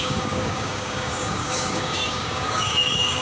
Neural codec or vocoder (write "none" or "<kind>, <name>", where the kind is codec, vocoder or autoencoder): codec, DAC